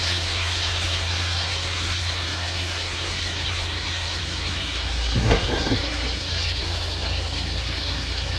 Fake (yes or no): yes